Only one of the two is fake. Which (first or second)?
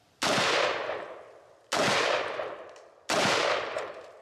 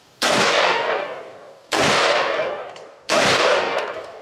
second